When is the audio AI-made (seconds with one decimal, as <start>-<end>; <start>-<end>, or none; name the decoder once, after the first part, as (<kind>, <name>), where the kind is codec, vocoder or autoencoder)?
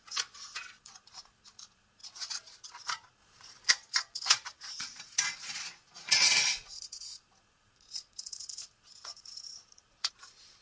0.0-10.6 (vocoder, Vocos)